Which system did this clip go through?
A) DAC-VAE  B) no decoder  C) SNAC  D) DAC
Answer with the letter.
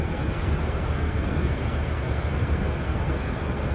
C